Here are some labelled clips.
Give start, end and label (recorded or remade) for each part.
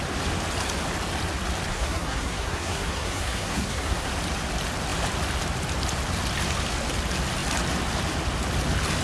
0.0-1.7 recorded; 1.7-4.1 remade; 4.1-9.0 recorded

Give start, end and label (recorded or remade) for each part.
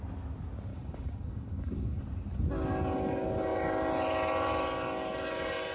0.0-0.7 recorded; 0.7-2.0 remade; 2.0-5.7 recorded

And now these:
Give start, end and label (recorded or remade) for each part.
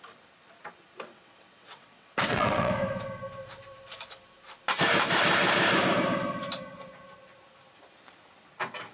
0.0-1.1 recorded; 1.1-2.7 remade; 2.7-8.9 recorded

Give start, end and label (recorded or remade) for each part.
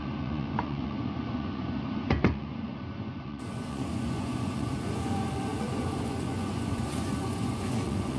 0.0-8.2 remade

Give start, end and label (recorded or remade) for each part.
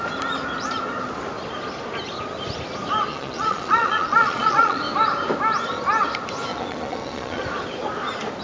0.0-3.1 recorded; 3.1-4.8 remade; 4.8-6.5 recorded; 6.5-7.4 remade; 7.4-8.4 recorded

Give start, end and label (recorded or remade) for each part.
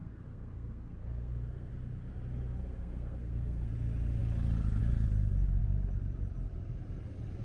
0.0-1.7 remade; 1.7-2.6 recorded; 2.6-3.7 remade; 3.7-7.4 recorded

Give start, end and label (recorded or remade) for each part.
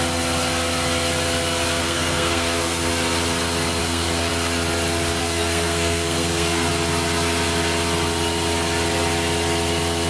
0.0-1.8 recorded; 1.8-2.9 remade; 2.9-3.8 recorded; 3.8-4.3 remade; 4.3-5.2 recorded; 5.2-6.7 remade; 6.7-10.1 recorded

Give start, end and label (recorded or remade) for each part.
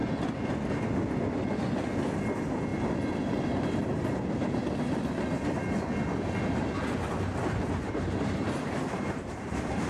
0.0-7.3 recorded; 7.3-9.9 remade